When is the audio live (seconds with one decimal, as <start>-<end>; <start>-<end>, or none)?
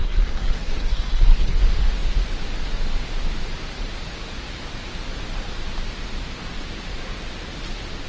1.6-8.1